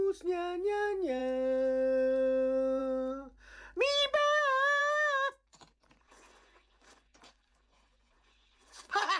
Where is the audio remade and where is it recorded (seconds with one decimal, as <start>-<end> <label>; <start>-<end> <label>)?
0.0-5.5 recorded; 5.5-9.2 remade